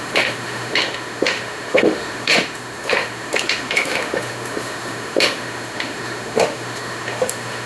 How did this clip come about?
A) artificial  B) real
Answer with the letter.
A